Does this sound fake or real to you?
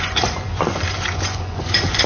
fake